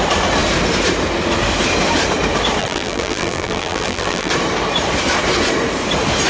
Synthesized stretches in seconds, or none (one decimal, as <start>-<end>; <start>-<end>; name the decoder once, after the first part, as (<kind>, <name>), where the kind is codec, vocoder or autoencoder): 2.6-4.3 (vocoder, BigVGAN v2)

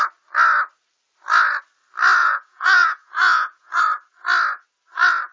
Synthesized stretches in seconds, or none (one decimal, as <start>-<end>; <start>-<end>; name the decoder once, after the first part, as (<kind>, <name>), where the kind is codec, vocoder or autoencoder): 2.2-3.8 (vocoder, Vocos)

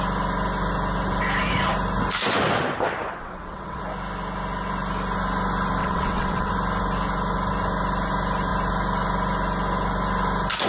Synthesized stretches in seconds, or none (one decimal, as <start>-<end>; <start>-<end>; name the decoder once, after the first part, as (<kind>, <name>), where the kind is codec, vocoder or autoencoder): 3.2-3.8 (vocoder, WaveNeXt); 5.8-6.5

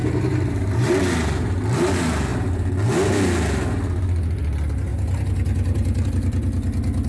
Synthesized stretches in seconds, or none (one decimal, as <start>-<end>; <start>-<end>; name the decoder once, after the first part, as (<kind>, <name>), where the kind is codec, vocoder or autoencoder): 0.0-0.9 (vocoder, BigVGAN v2); 4.9-6.1

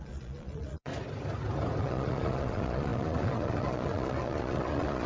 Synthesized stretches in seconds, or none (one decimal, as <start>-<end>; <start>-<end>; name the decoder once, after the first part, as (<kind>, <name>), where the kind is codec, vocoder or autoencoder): 0.0-0.9 (vocoder, Vocos); 1.8-5.1

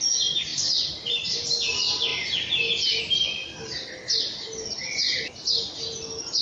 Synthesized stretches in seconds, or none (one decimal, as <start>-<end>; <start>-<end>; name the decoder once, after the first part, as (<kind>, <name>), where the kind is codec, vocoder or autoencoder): 0.5-1.5 (vocoder, BigVGAN v2); 2.1-3.0

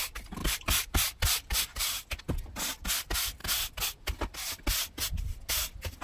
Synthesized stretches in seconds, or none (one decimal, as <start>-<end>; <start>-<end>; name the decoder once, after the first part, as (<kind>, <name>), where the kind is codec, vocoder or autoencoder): 0.4-1.6 (vocoder, BigVGAN v2)